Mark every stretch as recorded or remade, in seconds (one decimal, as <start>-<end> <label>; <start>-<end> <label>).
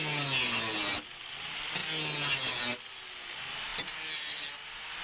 0.0-5.0 recorded